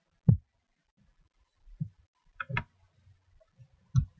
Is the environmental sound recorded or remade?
recorded